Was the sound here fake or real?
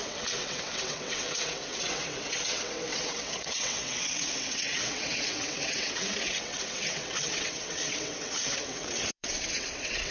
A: fake